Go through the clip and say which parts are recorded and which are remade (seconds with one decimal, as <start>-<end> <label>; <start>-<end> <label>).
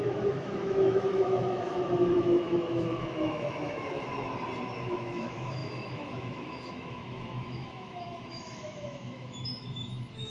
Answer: 0.0-4.1 remade; 4.1-4.9 recorded; 4.9-10.3 remade